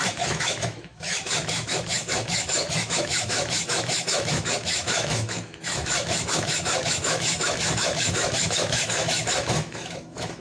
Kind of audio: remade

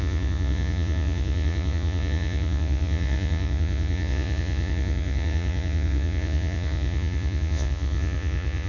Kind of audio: remade